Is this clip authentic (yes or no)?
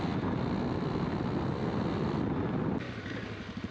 yes